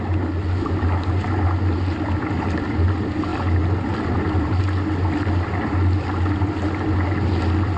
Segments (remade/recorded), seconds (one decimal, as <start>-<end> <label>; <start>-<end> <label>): 0.0-7.8 recorded